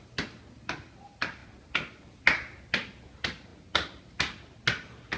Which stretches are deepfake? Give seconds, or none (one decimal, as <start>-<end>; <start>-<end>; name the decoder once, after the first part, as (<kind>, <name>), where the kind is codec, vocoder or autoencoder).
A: none